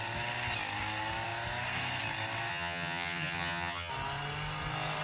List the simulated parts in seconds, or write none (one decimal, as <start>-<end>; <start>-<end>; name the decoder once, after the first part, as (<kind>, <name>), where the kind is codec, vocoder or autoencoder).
2.5-3.9 (vocoder, HiFi-GAN)